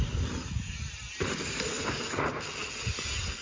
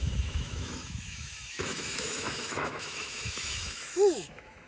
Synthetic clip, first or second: second